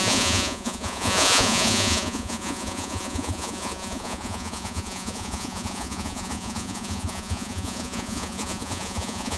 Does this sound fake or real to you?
fake